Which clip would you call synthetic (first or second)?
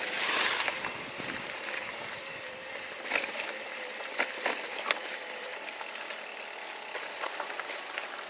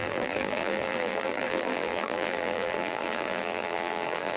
second